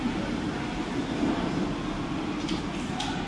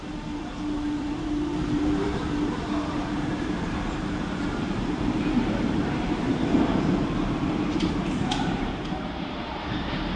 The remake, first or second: second